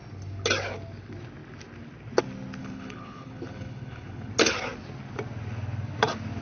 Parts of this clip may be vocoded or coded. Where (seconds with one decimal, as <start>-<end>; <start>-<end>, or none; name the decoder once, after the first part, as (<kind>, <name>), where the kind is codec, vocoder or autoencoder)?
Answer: 2.6-4.3 (codec, HILCodec)